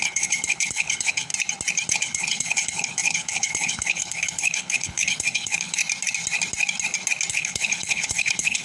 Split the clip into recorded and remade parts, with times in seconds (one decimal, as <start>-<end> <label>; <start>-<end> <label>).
0.0-1.3 remade; 1.3-1.9 recorded; 1.9-5.8 remade; 5.8-7.3 recorded; 7.3-8.6 remade